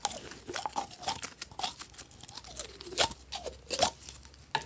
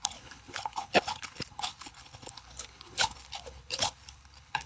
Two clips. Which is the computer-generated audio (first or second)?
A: second